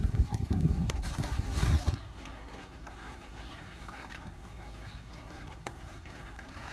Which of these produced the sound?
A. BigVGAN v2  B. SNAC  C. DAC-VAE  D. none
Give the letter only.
B